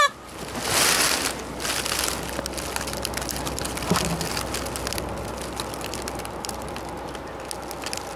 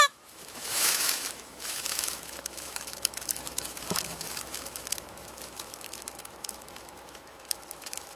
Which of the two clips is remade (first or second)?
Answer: second